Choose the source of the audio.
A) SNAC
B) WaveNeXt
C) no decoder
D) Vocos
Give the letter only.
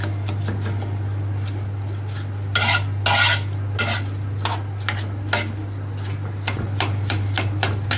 C